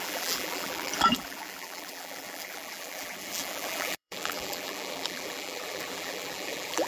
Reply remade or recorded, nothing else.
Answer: remade